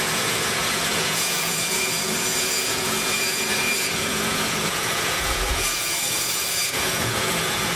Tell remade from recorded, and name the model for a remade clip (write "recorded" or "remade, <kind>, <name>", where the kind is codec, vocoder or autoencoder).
remade, vocoder, Vocos